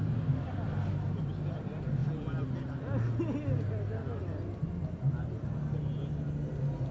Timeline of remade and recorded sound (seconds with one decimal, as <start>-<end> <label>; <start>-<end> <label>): 0.0-6.9 recorded